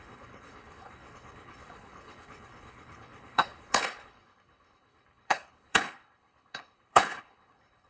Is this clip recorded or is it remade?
remade